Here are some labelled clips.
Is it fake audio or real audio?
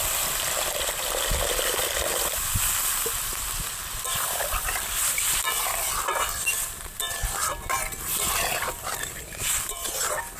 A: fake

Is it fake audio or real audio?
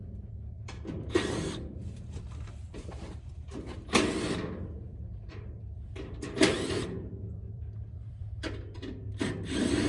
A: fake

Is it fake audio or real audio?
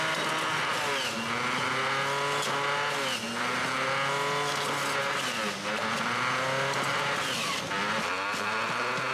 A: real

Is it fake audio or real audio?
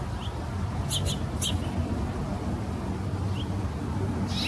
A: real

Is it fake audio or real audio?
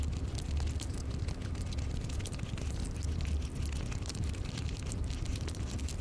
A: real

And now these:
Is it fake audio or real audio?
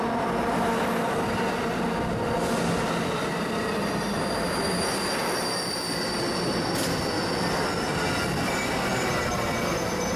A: real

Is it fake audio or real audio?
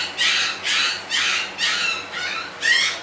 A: real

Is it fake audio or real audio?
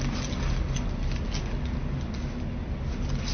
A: real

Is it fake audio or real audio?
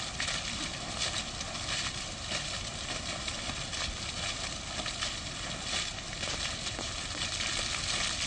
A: real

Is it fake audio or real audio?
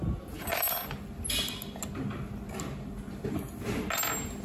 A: real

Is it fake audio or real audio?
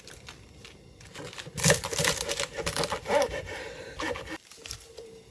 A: fake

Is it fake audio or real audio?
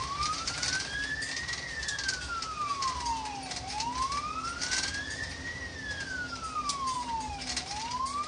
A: fake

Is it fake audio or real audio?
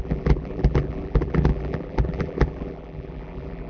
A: fake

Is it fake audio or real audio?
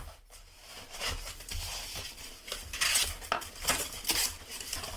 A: real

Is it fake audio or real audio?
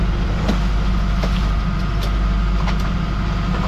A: real